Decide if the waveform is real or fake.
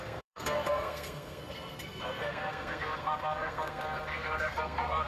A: fake